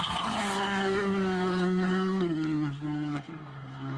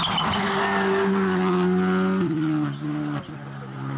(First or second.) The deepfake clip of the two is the first